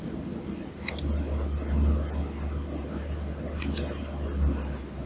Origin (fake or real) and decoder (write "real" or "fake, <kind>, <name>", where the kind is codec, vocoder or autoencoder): real